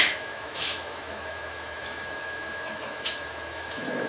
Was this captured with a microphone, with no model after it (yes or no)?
no